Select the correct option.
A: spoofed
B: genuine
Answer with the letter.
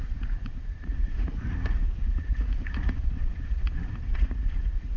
A